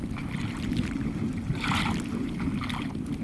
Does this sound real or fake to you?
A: real